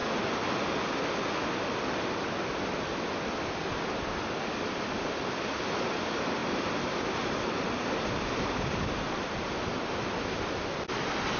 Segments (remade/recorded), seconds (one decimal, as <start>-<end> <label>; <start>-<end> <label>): 0.0-11.4 recorded